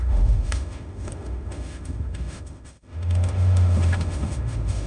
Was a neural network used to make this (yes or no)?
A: yes